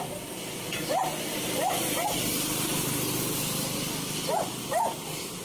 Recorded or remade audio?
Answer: recorded